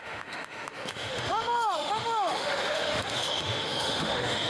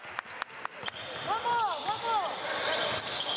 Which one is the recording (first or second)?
second